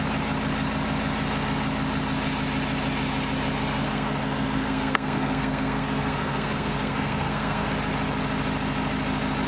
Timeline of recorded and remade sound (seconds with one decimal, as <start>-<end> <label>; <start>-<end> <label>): 0.0-3.8 recorded; 3.8-7.7 remade; 7.7-9.5 recorded